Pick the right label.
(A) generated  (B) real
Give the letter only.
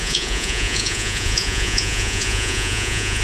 A